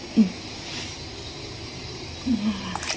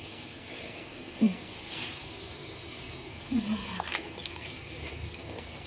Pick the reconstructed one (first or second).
second